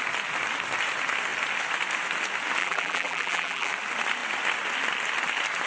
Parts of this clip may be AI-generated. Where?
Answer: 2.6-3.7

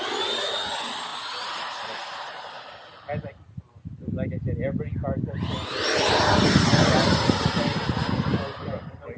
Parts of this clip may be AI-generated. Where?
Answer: none

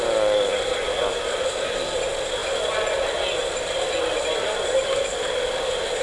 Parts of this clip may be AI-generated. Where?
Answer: none

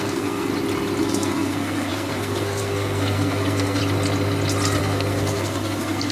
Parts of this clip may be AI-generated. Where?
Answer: 0.0-0.5; 1.0-3.8; 4.8-6.1